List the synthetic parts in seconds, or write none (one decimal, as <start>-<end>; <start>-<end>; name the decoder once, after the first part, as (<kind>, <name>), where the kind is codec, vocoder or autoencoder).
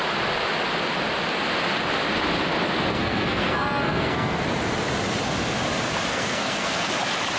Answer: 2.9-4.4 (codec, SNAC); 6.1-6.9